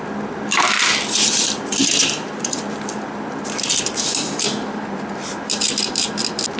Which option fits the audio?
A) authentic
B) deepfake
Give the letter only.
A